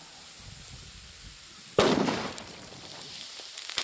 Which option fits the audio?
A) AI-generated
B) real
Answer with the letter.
B